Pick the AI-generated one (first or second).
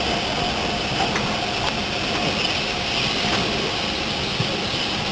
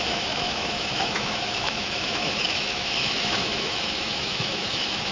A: second